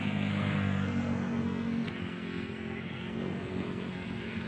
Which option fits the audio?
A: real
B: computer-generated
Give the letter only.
B